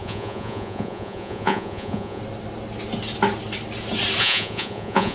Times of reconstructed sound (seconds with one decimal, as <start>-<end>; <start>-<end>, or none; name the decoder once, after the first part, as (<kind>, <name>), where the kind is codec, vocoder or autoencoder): 0.0-2.2 (vocoder, Vocos); 4.2-5.1